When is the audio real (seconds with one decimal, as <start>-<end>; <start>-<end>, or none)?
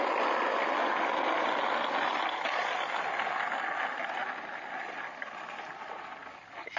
0.0-6.8